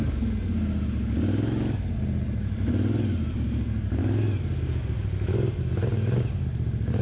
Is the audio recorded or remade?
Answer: recorded